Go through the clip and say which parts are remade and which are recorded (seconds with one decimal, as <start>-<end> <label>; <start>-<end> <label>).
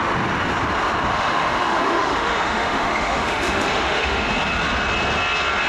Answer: 0.0-1.1 recorded; 1.1-4.3 remade; 4.3-5.7 recorded